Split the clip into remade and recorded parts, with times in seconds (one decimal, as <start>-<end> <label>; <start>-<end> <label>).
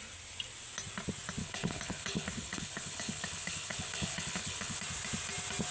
0.0-1.4 recorded; 1.4-4.8 remade; 4.8-5.7 recorded